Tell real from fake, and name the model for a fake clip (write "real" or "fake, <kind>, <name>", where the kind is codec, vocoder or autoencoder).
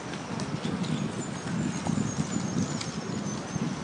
real